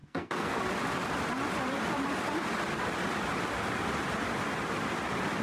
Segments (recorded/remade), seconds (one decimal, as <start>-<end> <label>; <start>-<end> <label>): 0.0-0.6 remade; 0.6-5.4 recorded

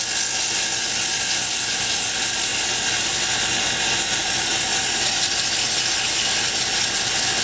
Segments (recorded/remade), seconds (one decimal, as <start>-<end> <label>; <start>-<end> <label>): 0.0-7.4 recorded

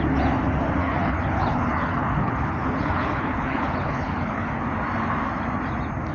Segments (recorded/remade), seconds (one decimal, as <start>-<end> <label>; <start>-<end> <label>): 0.0-0.8 recorded; 0.8-4.5 remade; 4.5-6.1 recorded

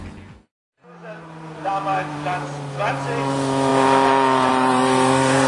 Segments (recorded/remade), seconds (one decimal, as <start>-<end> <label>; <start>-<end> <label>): 0.0-5.5 recorded